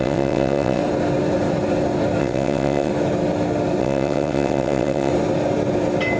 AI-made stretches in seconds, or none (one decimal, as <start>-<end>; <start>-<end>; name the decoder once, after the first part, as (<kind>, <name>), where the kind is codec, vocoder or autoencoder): 0.0-0.8 (vocoder, WaveNeXt); 2.2-2.9; 3.8-5.1